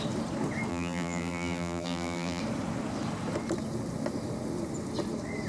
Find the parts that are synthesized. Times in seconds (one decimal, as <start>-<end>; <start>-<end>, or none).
0.7-2.4